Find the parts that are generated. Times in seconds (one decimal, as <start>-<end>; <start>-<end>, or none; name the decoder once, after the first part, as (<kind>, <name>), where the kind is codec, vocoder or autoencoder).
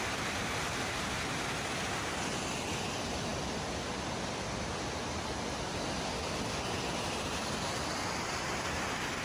none